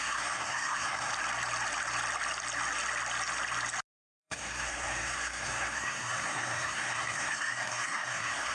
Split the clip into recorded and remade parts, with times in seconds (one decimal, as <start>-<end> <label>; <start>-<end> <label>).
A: 0.0-1.1 remade; 1.1-3.9 recorded; 3.9-8.5 remade